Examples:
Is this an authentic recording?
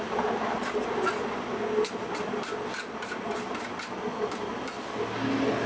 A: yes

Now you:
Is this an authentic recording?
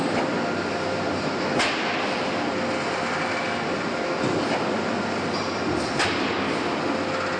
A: yes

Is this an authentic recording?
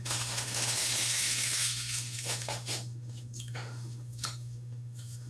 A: no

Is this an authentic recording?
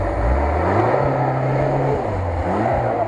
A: yes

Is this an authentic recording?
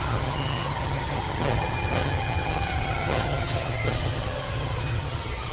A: no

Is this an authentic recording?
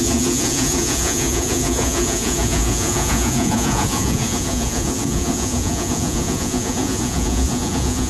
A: no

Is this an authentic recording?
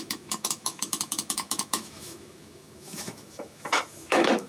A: no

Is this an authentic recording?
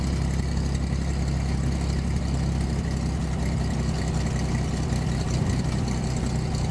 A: yes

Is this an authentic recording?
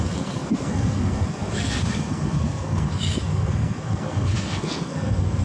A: no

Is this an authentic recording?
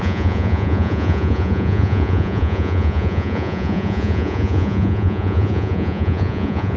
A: no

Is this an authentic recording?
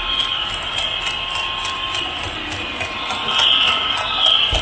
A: yes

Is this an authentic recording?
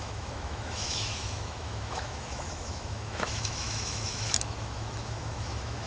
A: no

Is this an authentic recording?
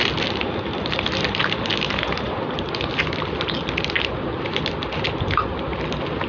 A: yes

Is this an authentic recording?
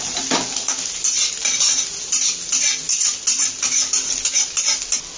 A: yes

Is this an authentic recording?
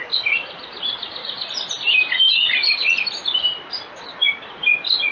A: yes